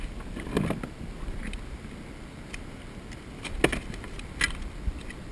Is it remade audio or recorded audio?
recorded